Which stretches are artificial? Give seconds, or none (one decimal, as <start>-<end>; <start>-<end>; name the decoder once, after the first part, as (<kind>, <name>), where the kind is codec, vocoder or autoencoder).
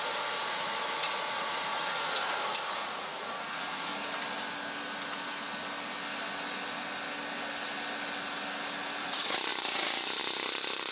0.0-3.9 (vocoder, Vocos); 9.0-10.9